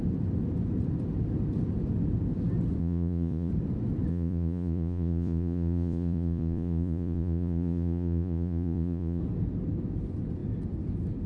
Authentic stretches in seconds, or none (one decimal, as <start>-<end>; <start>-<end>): 0.0-2.8; 3.5-4.1; 9.2-11.3